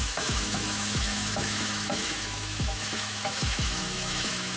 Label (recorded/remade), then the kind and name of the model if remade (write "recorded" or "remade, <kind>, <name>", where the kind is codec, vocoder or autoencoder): remade, autoencoder, DAC-VAE